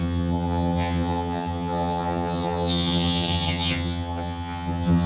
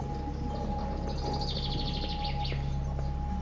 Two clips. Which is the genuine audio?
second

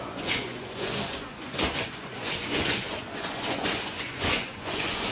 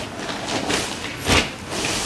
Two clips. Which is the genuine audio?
second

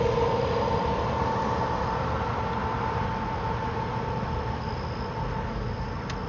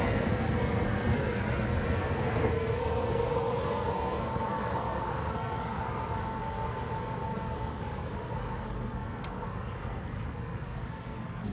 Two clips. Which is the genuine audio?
first